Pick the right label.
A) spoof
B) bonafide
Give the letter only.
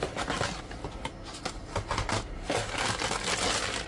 B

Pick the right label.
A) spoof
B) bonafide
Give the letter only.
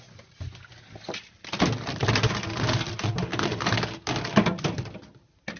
B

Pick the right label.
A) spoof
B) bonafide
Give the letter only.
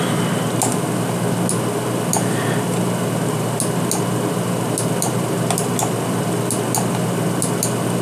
B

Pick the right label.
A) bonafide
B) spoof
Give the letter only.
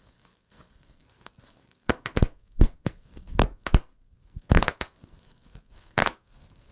B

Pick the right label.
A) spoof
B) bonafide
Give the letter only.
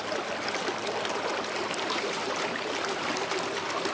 B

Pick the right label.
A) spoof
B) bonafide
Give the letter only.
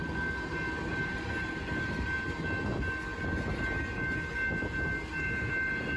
B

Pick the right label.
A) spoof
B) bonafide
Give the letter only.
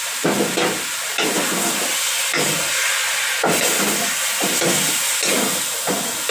B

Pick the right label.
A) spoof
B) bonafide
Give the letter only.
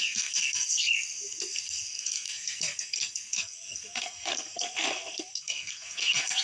A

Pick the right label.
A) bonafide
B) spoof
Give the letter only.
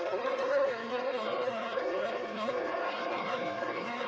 B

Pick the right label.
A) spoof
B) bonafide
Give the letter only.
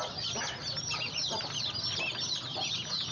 B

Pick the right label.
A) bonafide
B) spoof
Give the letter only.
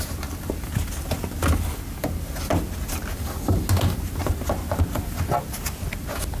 A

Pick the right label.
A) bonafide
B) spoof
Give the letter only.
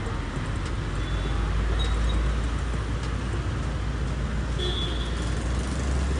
A